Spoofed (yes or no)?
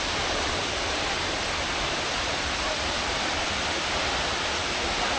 no